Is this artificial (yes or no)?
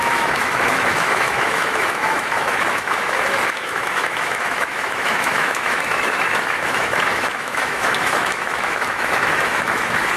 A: yes